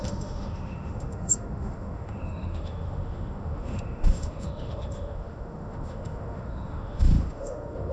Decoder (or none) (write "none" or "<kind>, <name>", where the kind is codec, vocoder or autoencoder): autoencoder, DAC-VAE